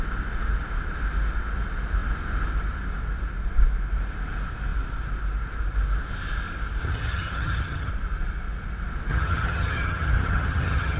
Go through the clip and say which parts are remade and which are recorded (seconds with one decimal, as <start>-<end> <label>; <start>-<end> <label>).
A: 0.0-6.8 recorded; 6.8-7.9 remade; 7.9-9.1 recorded; 9.1-11.0 remade